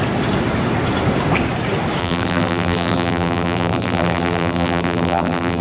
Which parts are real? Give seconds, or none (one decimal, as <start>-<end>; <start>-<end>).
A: 0.0-2.0